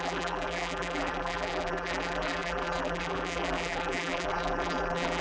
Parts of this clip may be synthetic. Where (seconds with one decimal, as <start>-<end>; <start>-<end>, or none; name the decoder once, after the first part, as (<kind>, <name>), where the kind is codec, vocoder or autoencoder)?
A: 0.0-5.2 (vocoder, BigVGAN v2)